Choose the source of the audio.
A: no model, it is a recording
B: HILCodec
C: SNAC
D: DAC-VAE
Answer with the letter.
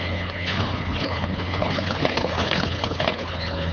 B